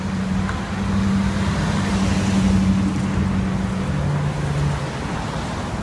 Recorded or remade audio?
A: recorded